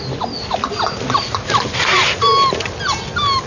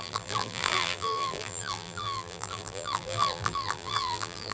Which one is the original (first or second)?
first